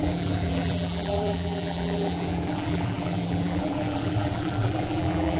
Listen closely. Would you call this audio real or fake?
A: fake